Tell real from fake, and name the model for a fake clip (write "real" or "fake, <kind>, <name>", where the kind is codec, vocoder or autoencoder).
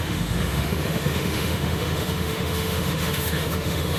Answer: fake, autoencoder, DAC-VAE